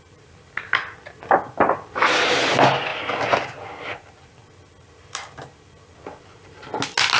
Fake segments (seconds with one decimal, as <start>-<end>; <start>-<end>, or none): none